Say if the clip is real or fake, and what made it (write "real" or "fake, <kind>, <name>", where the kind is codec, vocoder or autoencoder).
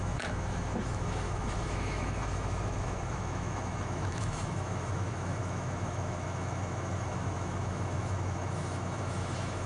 fake, autoencoder, DAC-VAE